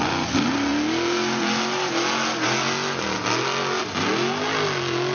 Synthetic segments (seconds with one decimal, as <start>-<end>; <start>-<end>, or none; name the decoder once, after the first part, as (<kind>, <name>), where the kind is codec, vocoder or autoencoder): none